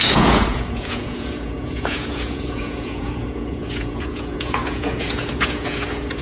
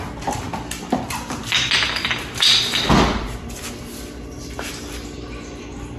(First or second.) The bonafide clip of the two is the second